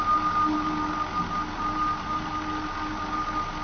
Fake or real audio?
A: real